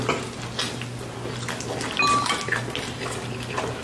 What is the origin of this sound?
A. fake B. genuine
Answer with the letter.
B